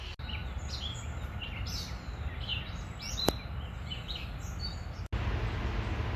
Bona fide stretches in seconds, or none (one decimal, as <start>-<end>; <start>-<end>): 0.0-6.2